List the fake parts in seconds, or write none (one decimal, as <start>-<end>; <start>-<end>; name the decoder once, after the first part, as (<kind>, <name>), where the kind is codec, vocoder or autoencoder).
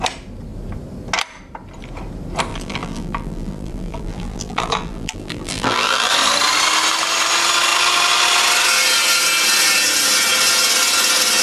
2.5-6.1 (vocoder, BigVGAN v2)